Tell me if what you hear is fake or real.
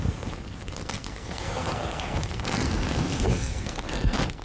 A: fake